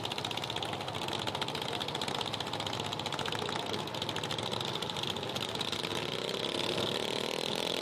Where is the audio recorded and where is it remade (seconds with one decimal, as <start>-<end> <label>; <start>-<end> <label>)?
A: 0.0-7.8 recorded